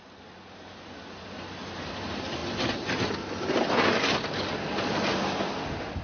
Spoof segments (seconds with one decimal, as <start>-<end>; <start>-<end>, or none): none